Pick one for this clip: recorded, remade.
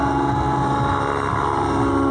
recorded